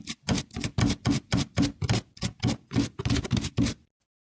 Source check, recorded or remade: recorded